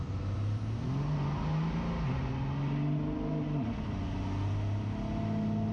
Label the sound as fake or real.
real